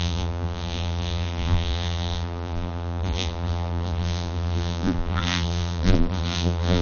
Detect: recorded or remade remade